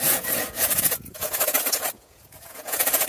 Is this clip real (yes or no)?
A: no